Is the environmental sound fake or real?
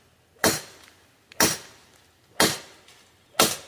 real